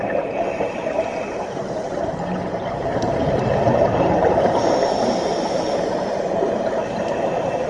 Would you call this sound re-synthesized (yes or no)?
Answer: yes